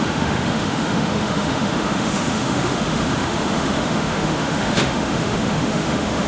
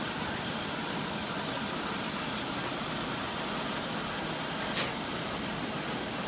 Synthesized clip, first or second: first